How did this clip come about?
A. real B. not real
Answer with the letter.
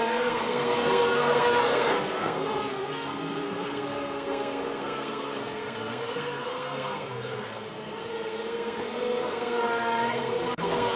B